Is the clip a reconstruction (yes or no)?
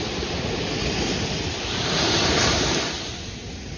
no